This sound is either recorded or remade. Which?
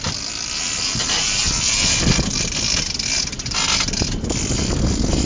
recorded